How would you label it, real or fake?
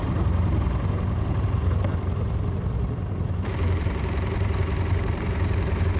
fake